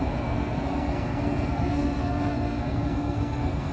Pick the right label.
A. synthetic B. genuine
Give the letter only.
A